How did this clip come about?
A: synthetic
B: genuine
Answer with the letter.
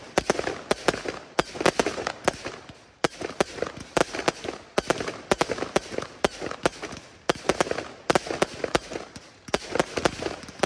B